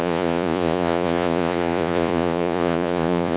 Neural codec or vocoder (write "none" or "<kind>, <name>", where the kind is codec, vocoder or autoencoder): vocoder, Vocos